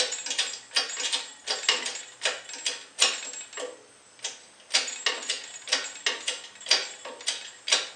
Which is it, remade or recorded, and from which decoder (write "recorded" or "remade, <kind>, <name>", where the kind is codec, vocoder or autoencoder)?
recorded